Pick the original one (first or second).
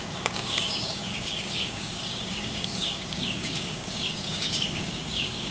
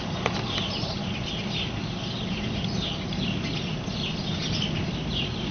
second